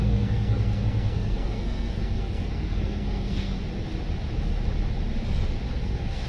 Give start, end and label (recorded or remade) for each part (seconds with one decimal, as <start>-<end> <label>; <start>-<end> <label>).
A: 0.0-3.6 remade; 3.6-5.7 recorded; 5.7-6.3 remade